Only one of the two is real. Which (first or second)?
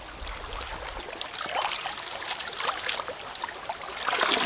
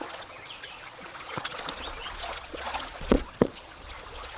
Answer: first